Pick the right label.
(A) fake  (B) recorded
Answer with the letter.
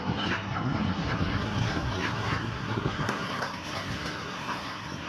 A